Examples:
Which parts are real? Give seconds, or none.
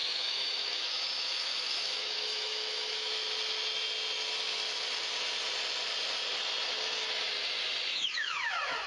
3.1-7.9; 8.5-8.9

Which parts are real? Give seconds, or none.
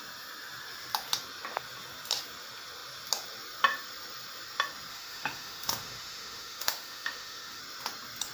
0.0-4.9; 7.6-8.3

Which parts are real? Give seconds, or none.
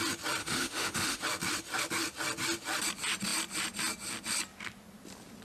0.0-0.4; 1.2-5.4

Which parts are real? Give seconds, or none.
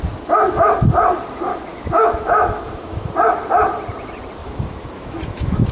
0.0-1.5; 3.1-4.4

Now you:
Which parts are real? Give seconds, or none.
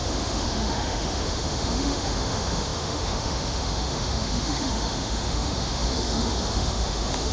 none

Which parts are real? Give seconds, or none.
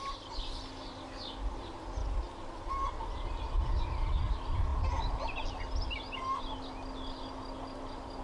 0.0-8.2